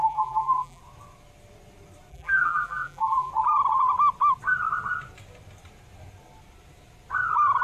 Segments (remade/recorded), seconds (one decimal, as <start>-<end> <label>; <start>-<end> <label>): 0.0-0.8 remade; 0.8-2.1 recorded; 2.1-3.3 remade; 3.3-7.6 recorded